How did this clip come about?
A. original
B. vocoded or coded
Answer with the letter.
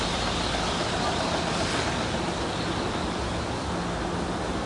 A